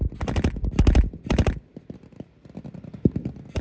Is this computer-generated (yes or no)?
no